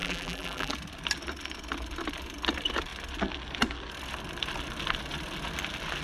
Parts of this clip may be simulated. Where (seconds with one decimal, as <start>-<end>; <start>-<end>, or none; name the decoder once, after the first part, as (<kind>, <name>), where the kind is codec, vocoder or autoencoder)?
0.0-0.7 (vocoder, BigVGAN v2)